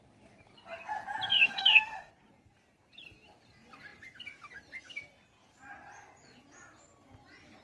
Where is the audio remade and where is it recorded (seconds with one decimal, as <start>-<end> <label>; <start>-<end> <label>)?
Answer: 0.0-1.3 recorded; 1.3-2.1 remade; 2.1-7.6 recorded